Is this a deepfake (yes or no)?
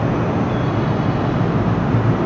no